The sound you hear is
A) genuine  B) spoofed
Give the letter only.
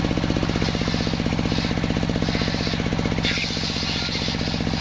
A